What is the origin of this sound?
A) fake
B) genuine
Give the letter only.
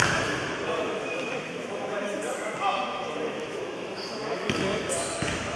A